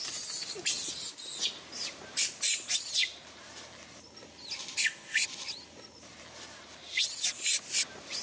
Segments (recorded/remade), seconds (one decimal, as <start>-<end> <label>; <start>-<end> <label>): 0.0-8.2 recorded